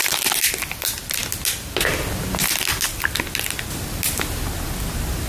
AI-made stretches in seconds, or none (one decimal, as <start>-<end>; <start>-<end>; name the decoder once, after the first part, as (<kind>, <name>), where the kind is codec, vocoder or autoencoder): none